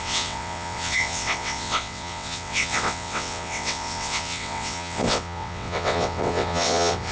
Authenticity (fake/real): fake